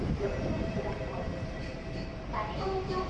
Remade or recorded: remade